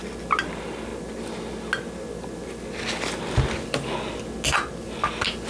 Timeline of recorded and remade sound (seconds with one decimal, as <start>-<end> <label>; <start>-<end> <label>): 0.0-5.5 recorded